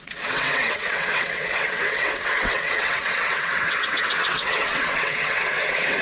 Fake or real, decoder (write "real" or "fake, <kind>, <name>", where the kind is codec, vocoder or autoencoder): fake, vocoder, WaveNeXt